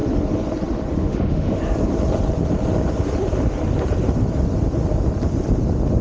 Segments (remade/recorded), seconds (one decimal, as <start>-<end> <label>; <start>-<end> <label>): 0.0-1.0 recorded; 1.0-1.6 remade; 1.6-6.0 recorded